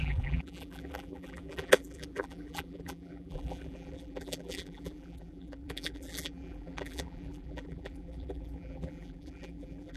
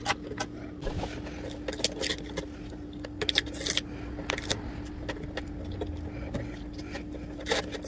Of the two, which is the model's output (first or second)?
first